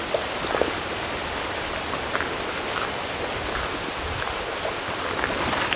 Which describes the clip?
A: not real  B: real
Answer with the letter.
B